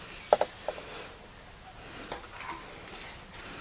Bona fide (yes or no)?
yes